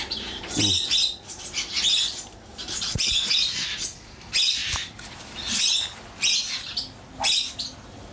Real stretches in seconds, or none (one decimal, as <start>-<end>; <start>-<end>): 0.0-2.5; 3.3-8.1